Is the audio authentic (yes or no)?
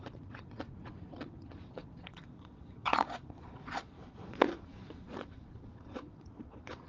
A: no